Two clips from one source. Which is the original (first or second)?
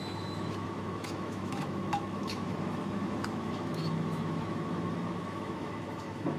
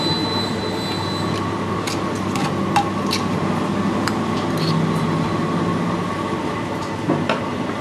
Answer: second